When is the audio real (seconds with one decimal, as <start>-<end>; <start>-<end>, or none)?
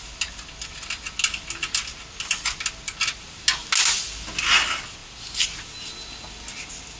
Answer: 0.0-7.0